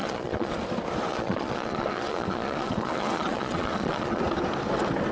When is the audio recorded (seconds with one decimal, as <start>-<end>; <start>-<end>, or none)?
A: 0.5-1.1; 4.2-5.1